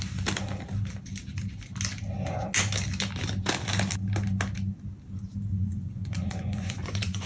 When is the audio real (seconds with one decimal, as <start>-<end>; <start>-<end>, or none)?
0.0-5.5